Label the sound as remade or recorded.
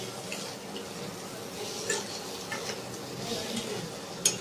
recorded